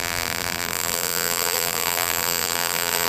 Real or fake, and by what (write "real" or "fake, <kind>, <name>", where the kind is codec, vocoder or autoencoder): fake, vocoder, BigVGAN v2